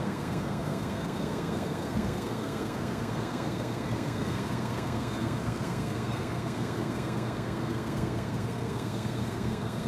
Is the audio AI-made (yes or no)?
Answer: yes